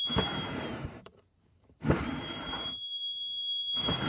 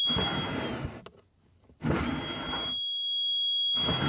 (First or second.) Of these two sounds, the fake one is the first